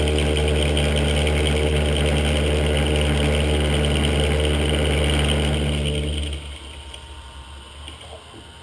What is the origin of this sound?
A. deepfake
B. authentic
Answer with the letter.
B